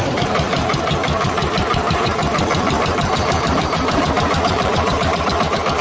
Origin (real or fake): fake